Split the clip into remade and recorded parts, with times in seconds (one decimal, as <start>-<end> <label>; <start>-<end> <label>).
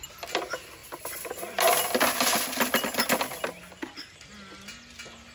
0.0-5.3 recorded